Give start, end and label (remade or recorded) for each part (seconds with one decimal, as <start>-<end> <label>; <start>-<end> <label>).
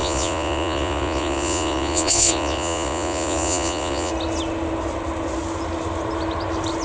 0.0-4.1 remade; 4.1-6.8 recorded